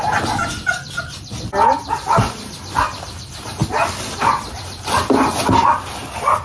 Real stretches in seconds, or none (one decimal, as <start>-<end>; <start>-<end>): 0.0-6.4